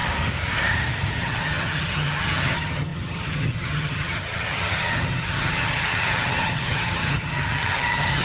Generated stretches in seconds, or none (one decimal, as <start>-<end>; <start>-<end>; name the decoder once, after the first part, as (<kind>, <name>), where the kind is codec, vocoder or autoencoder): 1.2-8.2 (vocoder, HiFi-GAN)